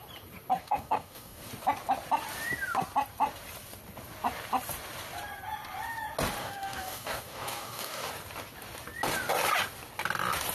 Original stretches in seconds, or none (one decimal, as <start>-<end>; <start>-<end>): 0.0-0.6; 1.5-6.4; 8.1-10.5